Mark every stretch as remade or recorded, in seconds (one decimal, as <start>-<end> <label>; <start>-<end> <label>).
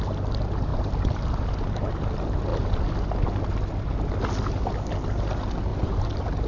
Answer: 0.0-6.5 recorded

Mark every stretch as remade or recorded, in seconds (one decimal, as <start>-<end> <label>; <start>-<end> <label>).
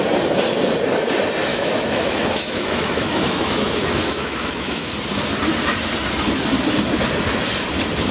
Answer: 0.0-1.5 recorded; 1.5-4.9 remade; 4.9-8.1 recorded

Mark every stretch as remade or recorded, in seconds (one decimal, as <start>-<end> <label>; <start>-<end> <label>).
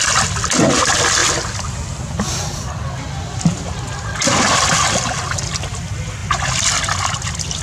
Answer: 0.0-7.6 recorded